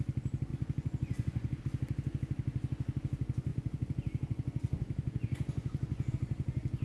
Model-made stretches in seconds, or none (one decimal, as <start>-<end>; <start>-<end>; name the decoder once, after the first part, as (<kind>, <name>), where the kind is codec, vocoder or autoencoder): 0.5-1.6 (vocoder, Vocos); 3.5-6.1